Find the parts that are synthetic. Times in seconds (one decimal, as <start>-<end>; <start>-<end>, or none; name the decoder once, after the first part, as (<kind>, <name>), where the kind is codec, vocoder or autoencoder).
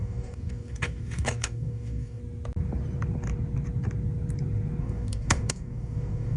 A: 0.0-2.2 (codec, DAC); 4.8-6.4